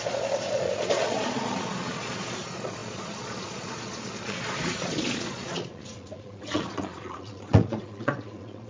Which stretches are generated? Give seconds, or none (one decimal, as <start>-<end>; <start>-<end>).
0.0-8.7